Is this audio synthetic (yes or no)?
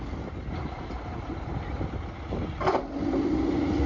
no